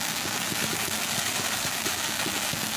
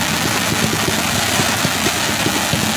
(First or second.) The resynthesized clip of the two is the first